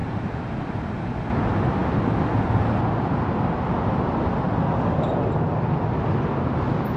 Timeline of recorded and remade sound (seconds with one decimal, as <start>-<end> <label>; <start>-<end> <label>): 0.0-7.0 recorded